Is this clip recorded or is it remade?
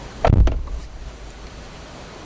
remade